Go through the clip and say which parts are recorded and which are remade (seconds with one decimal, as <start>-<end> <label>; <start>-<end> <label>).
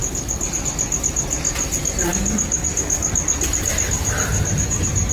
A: 0.0-2.1 recorded; 2.1-3.1 remade; 3.1-5.1 recorded